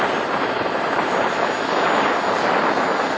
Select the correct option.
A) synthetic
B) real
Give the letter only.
B